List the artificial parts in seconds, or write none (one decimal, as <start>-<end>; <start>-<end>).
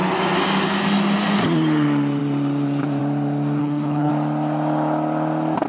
3.6-4.1